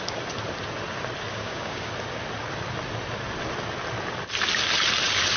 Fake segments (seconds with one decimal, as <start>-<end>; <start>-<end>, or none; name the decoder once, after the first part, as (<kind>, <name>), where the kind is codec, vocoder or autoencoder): 1.3-1.9 (codec, DAC)